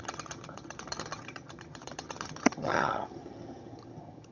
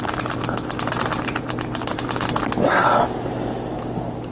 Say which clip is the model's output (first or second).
first